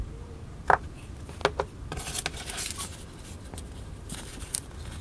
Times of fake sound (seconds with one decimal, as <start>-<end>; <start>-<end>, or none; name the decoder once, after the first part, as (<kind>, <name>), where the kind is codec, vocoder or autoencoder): none